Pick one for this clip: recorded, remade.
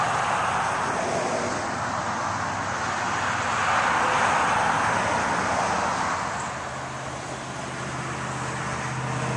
recorded